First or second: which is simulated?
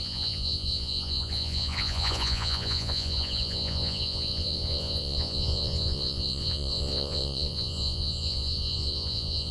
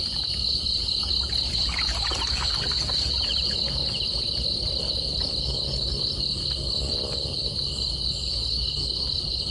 first